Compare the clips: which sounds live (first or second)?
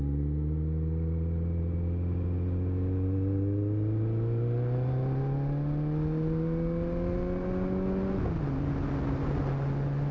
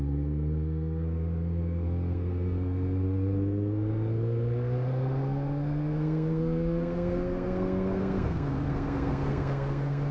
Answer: first